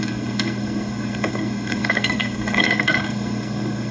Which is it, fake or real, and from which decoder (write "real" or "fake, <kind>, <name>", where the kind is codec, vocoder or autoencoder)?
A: fake, codec, SNAC